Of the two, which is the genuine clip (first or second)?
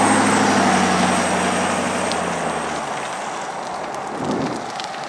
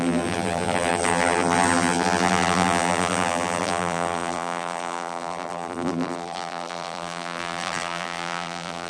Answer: first